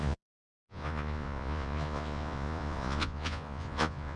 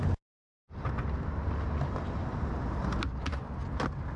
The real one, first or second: second